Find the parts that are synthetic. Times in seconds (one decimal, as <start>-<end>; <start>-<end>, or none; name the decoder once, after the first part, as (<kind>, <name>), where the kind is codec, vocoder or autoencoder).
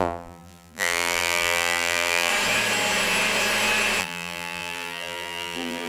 0.0-2.3 (vocoder, BigVGAN v2); 4.0-5.9